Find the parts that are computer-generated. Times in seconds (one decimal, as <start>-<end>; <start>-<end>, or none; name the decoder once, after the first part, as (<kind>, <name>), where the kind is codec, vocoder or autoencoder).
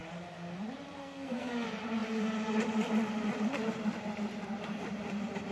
1.0-1.5 (codec, SNAC)